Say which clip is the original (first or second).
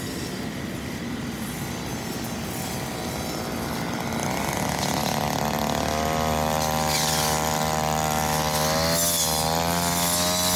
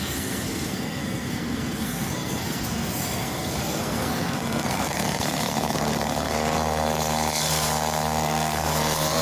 first